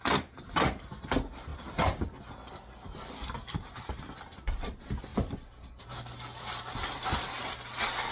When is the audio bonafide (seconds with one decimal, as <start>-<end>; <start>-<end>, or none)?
0.0-5.1; 5.8-8.1